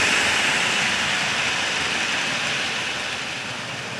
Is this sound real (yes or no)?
yes